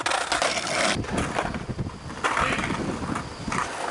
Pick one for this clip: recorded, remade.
recorded